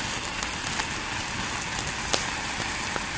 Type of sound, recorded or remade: recorded